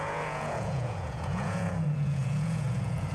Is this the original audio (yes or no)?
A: no